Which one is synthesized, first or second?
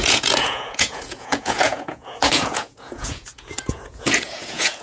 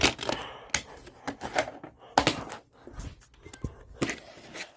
first